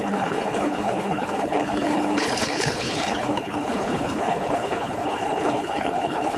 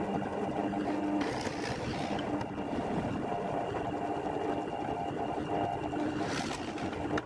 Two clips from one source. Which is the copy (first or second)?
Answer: first